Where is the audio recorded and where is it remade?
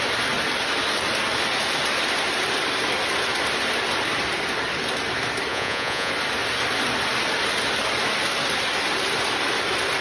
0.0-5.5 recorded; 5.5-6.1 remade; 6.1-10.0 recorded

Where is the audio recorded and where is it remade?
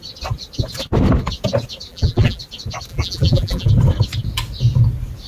0.0-1.9 recorded; 1.9-2.4 remade; 2.4-2.9 recorded; 2.9-3.7 remade; 3.7-5.3 recorded